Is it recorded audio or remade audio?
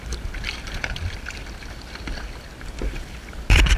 recorded